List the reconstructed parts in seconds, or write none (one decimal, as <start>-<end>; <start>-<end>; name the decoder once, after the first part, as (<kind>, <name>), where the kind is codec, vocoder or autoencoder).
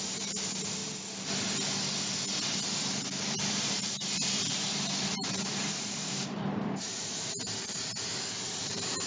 0.0-0.8 (vocoder, BigVGAN v2); 3.5-7.9; 8.5-9.1